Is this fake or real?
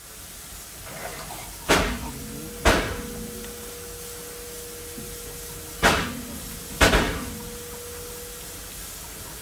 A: real